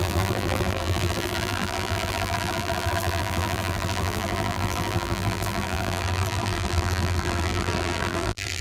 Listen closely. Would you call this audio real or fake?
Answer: fake